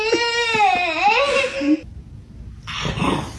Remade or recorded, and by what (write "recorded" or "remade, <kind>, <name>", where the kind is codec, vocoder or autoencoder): recorded